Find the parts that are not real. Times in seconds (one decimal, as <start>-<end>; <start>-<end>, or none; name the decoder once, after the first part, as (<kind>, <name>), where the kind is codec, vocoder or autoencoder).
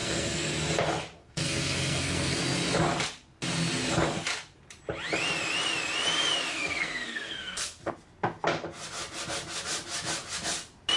0.0-0.5 (codec, SNAC); 1.2-2.4; 6.5-7.9